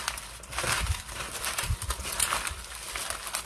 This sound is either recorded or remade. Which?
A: recorded